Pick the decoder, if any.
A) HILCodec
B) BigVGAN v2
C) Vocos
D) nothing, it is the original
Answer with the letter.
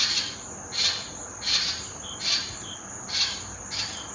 D